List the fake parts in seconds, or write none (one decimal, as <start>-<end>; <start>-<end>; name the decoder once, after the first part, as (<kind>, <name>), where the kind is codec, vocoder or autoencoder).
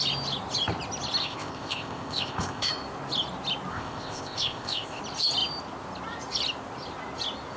1.2-2.7 (codec, ZipCodec); 3.7-5.0